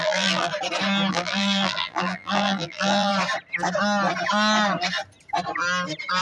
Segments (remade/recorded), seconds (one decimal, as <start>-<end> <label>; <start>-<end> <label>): 0.0-0.5 remade; 0.5-1.1 recorded; 1.1-3.1 remade; 3.1-6.2 recorded